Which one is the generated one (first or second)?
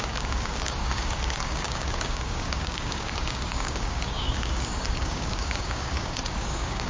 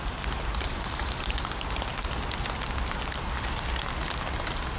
first